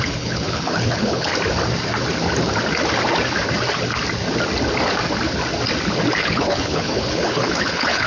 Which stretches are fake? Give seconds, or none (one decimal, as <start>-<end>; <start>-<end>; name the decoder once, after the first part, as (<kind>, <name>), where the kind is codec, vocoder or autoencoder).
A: 0.0-1.3 (codec, HILCodec); 6.2-8.1